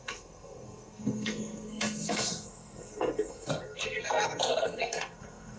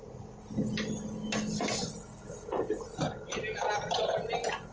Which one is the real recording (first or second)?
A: second